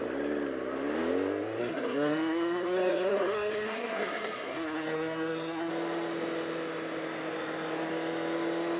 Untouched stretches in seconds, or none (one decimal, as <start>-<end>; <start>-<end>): 0.0-1.6; 5.7-8.8